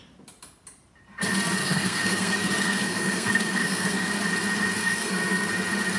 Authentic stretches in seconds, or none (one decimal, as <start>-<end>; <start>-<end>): 0.0-1.6; 4.1-4.8; 5.5-6.0